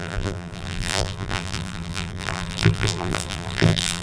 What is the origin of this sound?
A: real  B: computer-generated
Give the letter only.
B